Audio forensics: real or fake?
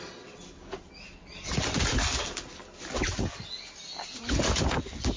real